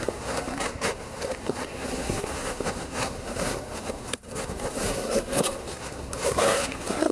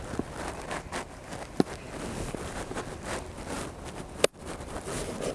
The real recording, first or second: second